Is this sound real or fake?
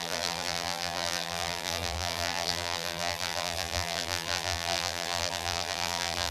fake